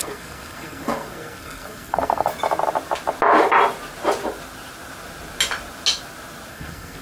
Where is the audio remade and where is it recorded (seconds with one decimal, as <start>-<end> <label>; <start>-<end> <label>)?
0.0-2.3 remade; 2.3-6.5 recorded; 6.5-7.0 remade